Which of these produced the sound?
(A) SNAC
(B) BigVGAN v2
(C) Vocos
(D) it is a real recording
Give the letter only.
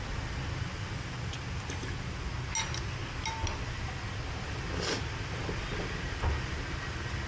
D